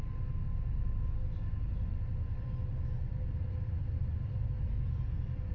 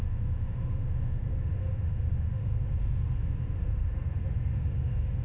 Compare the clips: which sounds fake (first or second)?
second